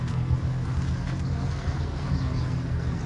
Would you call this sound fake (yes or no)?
yes